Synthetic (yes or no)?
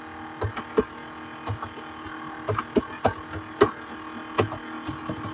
no